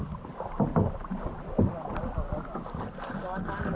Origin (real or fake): real